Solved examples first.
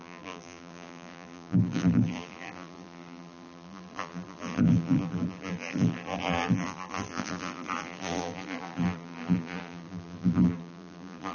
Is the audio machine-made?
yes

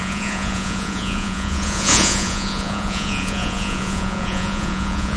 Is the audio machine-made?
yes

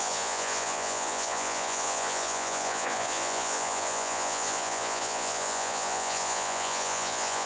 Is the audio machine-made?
yes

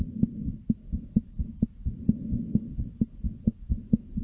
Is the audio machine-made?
no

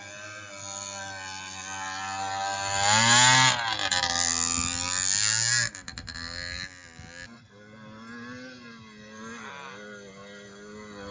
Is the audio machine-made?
no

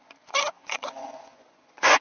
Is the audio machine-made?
yes